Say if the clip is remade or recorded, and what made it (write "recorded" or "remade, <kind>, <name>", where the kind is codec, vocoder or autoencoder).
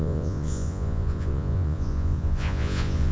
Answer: remade, vocoder, Vocos